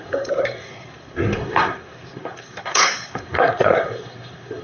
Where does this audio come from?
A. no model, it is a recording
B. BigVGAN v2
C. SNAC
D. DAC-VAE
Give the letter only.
C